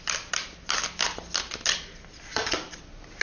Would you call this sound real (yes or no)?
yes